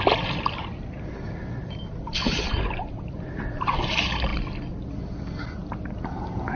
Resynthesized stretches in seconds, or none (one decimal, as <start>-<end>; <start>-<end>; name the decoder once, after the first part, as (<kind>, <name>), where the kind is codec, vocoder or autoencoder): 1.6-3.9 (vocoder, BigVGAN v2)